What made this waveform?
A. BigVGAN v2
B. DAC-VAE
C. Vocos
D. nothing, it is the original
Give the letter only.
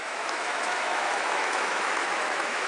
B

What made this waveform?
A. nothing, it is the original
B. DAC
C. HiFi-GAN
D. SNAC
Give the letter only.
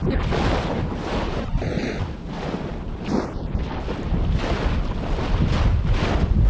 A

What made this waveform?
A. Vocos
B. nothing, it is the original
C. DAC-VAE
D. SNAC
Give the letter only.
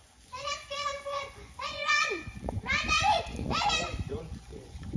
A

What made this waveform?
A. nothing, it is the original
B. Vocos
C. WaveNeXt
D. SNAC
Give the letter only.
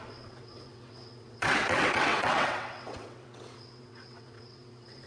C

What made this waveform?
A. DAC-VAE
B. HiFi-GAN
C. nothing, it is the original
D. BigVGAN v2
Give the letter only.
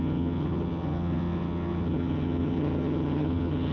B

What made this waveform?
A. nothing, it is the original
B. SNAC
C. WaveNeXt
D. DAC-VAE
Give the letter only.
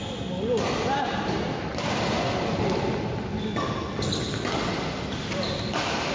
A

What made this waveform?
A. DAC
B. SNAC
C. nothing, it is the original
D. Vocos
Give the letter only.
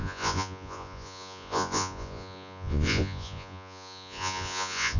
D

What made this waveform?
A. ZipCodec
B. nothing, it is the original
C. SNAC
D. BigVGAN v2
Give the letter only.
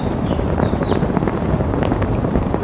D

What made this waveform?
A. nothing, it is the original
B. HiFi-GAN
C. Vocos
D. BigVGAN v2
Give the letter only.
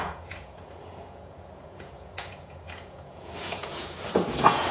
C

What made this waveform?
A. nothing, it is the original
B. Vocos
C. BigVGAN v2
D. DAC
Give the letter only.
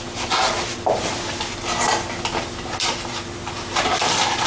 A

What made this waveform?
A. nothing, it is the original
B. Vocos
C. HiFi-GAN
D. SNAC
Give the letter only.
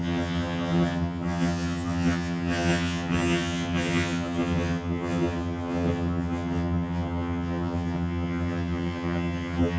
C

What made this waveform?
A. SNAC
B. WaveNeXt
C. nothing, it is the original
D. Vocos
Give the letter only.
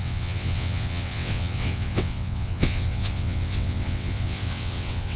B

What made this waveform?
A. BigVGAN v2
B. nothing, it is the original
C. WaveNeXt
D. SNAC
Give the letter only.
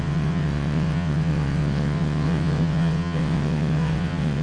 C